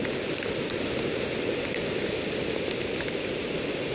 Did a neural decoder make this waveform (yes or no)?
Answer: yes